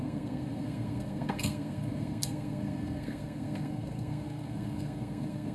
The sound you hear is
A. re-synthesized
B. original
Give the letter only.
A